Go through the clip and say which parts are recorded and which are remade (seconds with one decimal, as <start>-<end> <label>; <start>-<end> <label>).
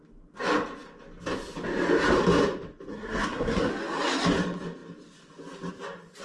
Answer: 0.0-2.9 recorded; 2.9-3.7 remade; 3.7-6.2 recorded